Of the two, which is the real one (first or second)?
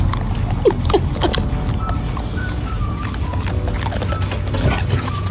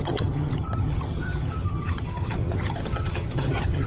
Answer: first